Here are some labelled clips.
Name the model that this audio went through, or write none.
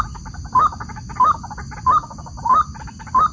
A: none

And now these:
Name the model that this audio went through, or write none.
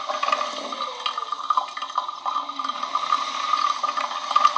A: none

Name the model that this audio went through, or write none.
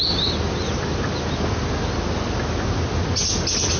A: none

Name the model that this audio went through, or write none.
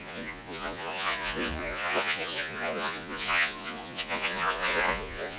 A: vocoder, Vocos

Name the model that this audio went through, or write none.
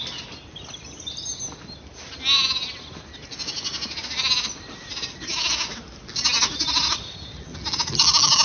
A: none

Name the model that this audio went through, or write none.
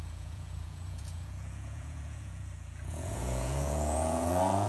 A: vocoder, Vocos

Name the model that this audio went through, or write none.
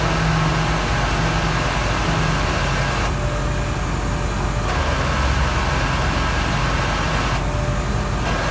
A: none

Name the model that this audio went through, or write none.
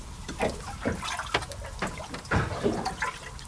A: none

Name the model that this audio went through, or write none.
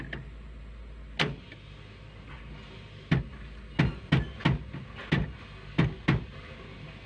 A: none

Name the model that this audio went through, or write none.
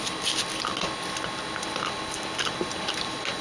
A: none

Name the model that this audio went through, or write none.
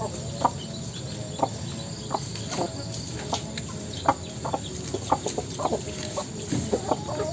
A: none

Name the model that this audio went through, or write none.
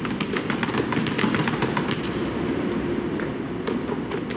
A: none